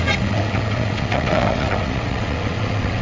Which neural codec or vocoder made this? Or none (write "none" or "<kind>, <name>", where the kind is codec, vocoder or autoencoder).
vocoder, WaveNeXt